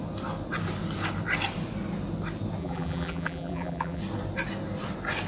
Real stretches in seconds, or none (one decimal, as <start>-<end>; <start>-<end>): 0.0-2.6; 4.0-5.3